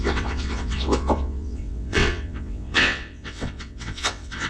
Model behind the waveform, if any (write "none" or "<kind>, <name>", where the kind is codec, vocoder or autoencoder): vocoder, WaveNeXt